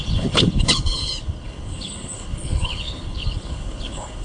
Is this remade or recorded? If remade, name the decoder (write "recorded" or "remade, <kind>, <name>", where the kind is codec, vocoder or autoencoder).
remade, codec, HILCodec